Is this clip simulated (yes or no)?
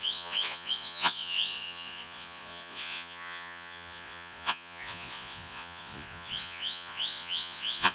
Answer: yes